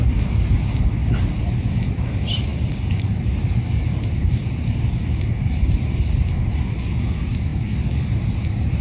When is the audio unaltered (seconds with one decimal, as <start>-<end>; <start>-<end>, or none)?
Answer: 0.0-2.5; 6.8-8.8